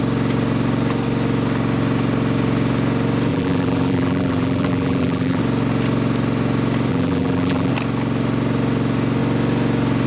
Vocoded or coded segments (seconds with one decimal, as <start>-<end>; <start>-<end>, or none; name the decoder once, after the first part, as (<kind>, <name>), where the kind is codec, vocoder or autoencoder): 3.3-5.4 (vocoder, BigVGAN v2); 6.9-7.7